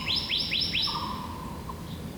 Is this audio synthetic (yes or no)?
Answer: yes